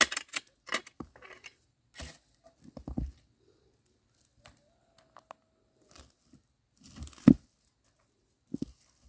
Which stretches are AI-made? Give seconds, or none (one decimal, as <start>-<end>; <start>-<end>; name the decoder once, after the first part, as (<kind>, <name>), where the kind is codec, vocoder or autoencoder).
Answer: none